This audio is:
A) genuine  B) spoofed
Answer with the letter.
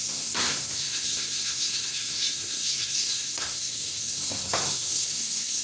B